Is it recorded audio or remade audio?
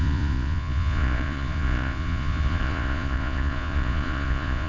remade